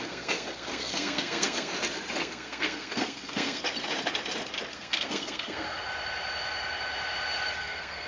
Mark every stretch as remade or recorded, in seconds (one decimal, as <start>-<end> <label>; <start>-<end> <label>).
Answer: 0.0-1.7 remade; 1.7-2.2 recorded; 2.2-3.6 remade; 3.6-4.7 recorded; 4.7-5.8 remade; 5.8-7.6 recorded; 7.6-8.1 remade